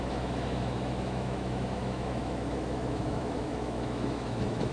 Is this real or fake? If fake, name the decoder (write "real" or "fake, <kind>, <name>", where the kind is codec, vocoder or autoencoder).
fake, autoencoder, DAC-VAE